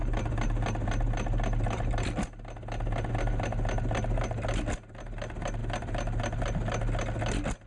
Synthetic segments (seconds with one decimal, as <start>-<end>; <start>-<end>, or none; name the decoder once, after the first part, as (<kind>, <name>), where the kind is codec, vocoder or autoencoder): none

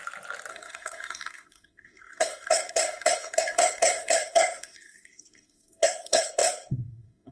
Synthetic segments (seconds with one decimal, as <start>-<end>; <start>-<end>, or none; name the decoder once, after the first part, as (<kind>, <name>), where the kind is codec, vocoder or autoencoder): 0.5-7.3 (codec, SNAC)

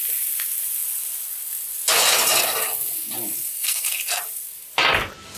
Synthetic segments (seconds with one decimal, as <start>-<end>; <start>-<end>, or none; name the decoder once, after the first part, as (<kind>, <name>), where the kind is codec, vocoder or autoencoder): 3.5-4.2 (codec, SNAC)

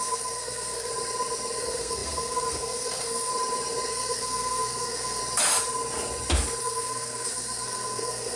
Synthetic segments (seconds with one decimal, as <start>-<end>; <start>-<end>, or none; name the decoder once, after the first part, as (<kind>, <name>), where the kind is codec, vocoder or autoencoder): 0.0-0.9 (codec, SNAC); 1.6-3.3; 3.9-5.2; 6.6-8.4

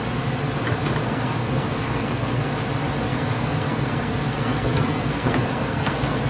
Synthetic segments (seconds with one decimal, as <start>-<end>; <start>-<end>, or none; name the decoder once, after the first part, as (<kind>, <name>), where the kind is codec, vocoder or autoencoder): 1.0-2.5 (codec, SNAC); 3.1-6.3